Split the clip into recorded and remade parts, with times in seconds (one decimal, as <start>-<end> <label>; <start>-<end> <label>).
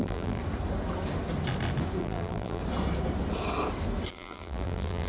0.0-0.4 remade; 0.4-2.0 recorded; 2.0-2.6 remade; 2.6-4.1 recorded; 4.1-5.1 remade